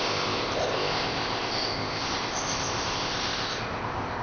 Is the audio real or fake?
fake